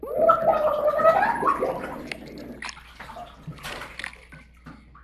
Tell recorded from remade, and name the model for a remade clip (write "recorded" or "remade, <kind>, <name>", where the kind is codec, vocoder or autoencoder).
recorded